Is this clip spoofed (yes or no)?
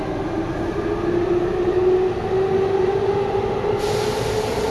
no